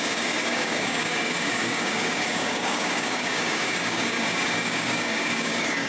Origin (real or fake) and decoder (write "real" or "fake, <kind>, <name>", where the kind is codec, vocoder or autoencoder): fake, codec, DAC